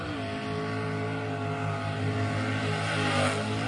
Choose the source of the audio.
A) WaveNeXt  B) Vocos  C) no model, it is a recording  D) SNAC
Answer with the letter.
C